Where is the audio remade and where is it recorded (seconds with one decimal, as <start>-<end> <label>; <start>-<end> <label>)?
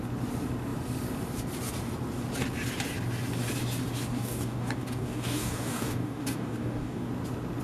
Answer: 0.0-4.1 recorded; 4.1-7.1 remade; 7.1-7.6 recorded